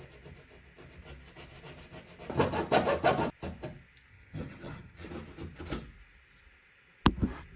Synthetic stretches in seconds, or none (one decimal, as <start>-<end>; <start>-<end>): 4.1-5.1